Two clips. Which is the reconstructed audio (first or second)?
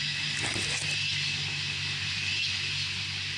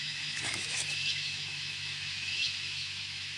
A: second